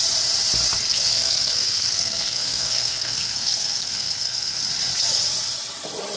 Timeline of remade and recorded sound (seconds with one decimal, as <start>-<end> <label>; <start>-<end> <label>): 0.0-0.9 recorded; 0.9-4.6 remade; 4.6-6.2 recorded